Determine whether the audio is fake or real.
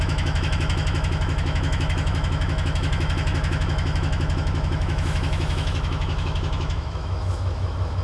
fake